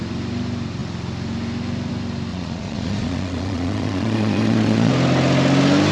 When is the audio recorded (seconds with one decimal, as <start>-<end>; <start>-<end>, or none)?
0.0-2.3; 4.9-5.9